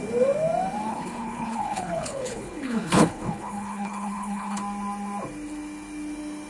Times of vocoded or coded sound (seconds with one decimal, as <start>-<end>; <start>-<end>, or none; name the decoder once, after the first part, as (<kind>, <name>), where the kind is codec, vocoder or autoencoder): 0.9-4.6 (codec, HILCodec)